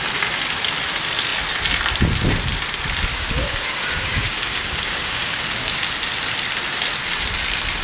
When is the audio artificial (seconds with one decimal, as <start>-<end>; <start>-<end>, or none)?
3.1-5.8